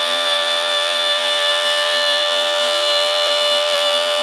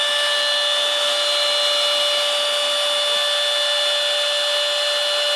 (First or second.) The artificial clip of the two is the first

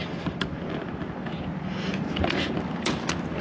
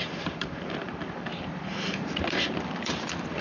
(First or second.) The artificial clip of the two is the second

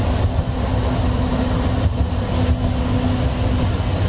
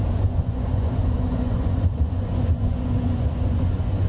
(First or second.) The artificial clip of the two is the second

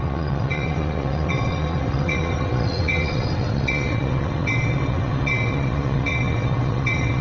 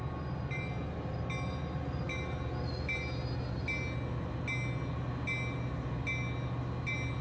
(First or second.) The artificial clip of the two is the first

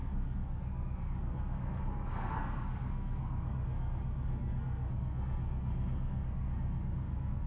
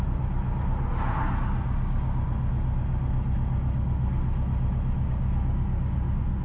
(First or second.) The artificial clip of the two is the first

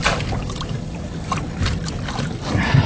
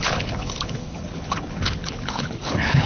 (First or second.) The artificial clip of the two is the second